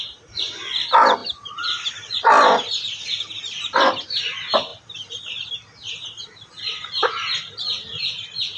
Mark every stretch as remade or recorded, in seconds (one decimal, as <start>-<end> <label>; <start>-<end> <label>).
0.0-8.6 recorded

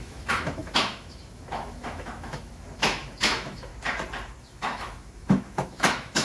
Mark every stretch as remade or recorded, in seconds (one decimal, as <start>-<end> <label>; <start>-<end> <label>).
0.0-3.7 remade; 3.7-4.4 recorded; 4.4-6.2 remade